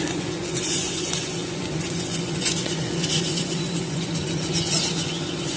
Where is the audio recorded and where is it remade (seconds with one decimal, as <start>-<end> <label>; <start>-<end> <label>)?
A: 0.0-5.6 remade